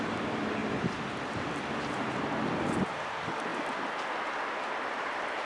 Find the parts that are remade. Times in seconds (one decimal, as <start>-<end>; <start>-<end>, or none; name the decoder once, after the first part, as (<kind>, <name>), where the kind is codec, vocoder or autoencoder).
0.0-0.6 (vocoder, BigVGAN v2); 1.2-3.5; 5.0-5.5

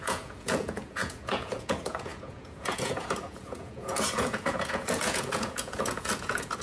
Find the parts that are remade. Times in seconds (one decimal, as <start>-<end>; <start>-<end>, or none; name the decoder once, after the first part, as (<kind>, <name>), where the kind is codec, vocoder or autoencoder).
0.0-6.6 (vocoder, Vocos)

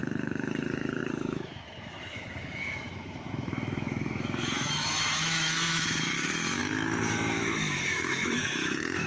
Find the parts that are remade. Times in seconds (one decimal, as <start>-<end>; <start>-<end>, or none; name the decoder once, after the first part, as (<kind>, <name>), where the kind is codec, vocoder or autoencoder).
0.0-9.1 (autoencoder, DAC-VAE)

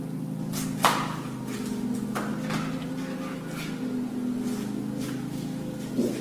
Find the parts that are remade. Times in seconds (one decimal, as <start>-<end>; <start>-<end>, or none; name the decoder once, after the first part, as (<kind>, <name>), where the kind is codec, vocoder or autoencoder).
none